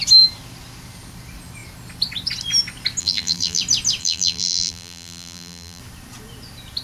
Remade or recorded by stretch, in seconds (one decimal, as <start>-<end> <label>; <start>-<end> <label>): 0.0-3.0 recorded; 3.0-3.6 remade; 3.6-4.0 recorded; 4.0-5.8 remade; 5.8-6.8 recorded